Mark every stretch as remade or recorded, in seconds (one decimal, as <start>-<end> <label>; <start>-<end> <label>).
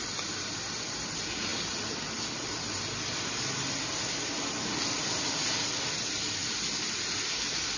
0.0-7.8 recorded